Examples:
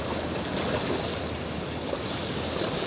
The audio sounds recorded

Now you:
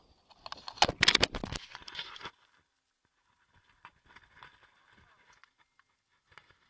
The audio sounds recorded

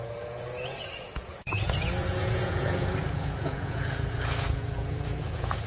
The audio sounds remade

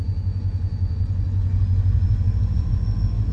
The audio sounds remade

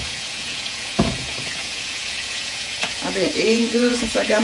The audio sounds remade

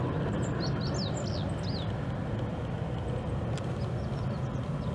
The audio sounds recorded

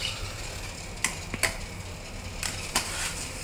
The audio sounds recorded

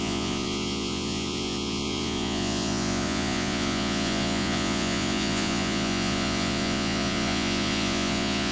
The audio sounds remade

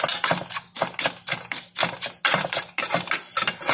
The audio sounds recorded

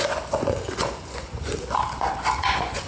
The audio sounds remade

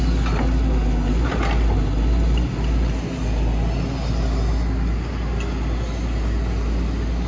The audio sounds recorded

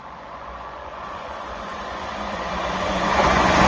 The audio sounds remade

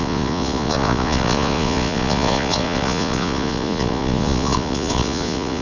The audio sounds remade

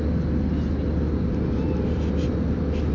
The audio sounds recorded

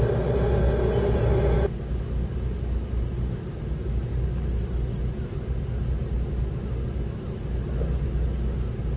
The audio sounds recorded